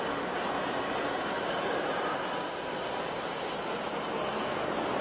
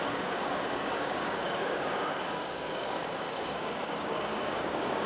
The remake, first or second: second